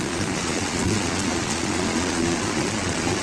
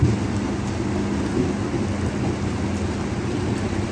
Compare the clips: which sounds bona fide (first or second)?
second